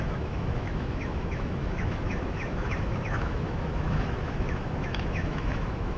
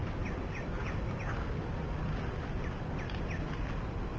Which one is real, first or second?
second